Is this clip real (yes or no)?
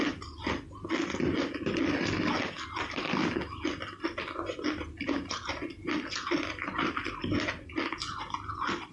yes